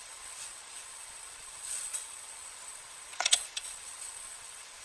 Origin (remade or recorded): remade